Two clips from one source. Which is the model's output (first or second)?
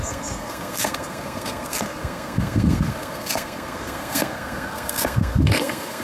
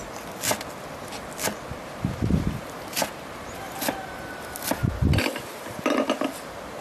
first